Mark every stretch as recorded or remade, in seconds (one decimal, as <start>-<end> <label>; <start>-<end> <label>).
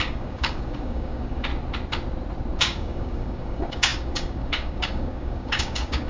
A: 0.0-1.5 remade; 1.5-2.6 recorded; 2.6-6.1 remade